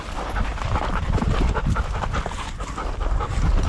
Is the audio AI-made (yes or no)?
no